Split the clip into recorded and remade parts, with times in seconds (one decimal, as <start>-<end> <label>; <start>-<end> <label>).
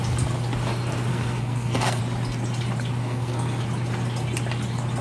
0.0-1.1 recorded; 1.1-2.0 remade; 2.0-3.0 recorded; 3.0-3.6 remade; 3.6-5.0 recorded